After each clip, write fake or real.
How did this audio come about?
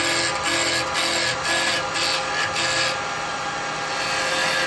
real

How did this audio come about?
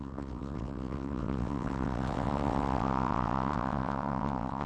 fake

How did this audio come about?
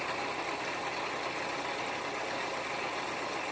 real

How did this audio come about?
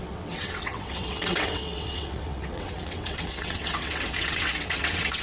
fake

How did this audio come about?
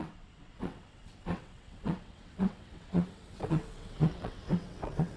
fake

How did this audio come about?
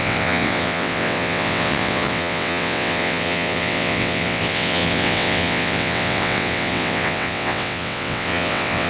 fake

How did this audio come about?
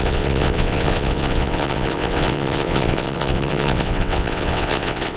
fake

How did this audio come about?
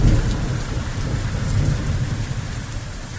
real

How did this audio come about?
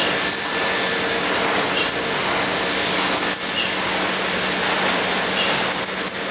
real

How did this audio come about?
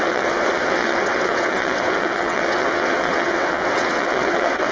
fake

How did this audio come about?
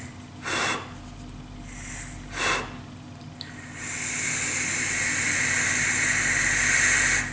real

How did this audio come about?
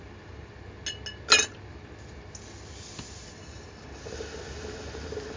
real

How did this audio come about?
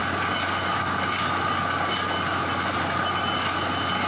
real